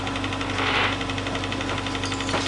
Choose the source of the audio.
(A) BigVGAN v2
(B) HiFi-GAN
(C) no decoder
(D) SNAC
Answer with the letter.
C